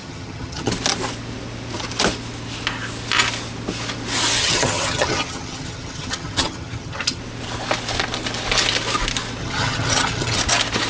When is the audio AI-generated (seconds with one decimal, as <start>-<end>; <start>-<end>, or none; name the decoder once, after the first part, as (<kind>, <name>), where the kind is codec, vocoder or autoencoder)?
0.0-0.7 (vocoder, HiFi-GAN); 4.4-7.2; 9.4-10.4